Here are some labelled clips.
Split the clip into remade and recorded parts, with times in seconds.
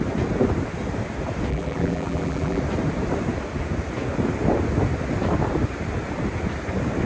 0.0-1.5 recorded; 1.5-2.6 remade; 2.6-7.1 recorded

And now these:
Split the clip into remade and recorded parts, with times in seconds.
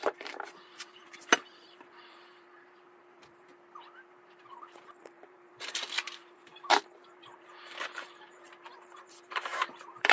0.0-3.5 remade; 3.5-4.1 recorded; 4.1-10.1 remade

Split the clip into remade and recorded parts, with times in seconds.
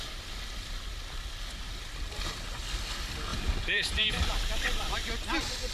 0.0-3.3 recorded; 3.3-4.3 remade; 4.3-5.7 recorded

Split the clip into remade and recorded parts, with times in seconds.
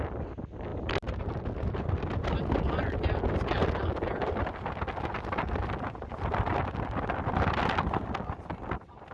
0.0-9.1 recorded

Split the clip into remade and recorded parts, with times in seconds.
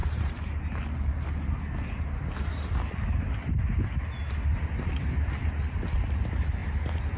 0.0-4.3 recorded; 4.3-7.2 remade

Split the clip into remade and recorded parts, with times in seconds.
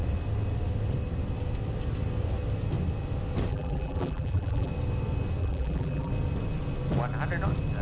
0.0-3.5 recorded; 3.5-4.7 remade; 4.7-5.4 recorded; 5.4-6.1 remade; 6.1-7.8 recorded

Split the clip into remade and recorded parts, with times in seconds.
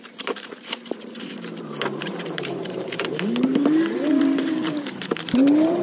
0.0-5.8 remade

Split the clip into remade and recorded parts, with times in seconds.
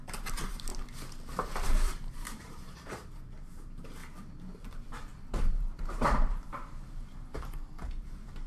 0.0-0.7 remade; 0.7-1.4 recorded; 1.4-4.0 remade; 4.0-4.5 recorded; 4.5-8.5 remade